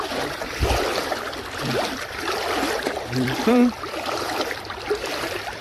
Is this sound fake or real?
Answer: fake